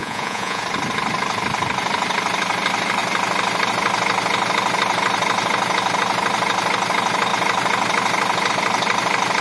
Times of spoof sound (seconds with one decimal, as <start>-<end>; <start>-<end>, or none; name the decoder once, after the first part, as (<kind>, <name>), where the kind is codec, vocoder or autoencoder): 0.0-0.6 (vocoder, Vocos)